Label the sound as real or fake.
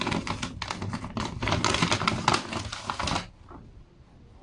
real